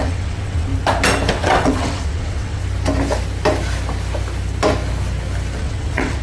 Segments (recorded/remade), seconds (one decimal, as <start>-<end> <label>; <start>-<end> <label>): 0.0-0.7 remade; 0.7-1.3 recorded; 1.3-2.6 remade; 2.6-5.6 recorded; 5.6-6.2 remade